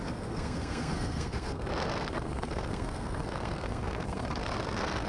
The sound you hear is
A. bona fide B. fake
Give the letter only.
B